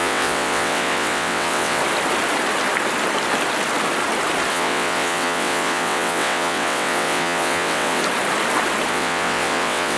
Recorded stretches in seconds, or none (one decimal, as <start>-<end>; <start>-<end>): 1.8-4.5; 8.0-8.9